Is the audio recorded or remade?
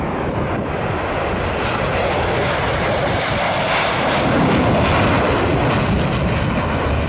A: recorded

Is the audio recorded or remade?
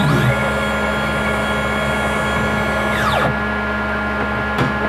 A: recorded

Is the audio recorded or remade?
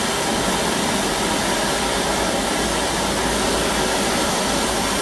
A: recorded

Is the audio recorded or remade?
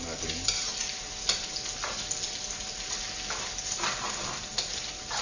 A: recorded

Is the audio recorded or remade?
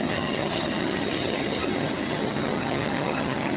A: remade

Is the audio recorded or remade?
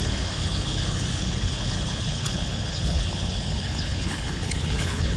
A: remade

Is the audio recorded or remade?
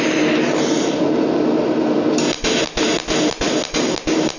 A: recorded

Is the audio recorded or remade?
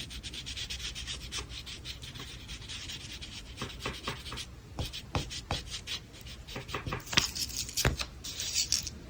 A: recorded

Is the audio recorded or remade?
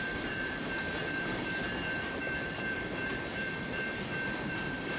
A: remade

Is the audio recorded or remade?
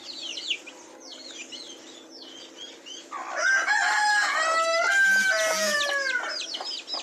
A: recorded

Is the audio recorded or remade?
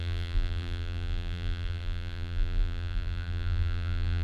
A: remade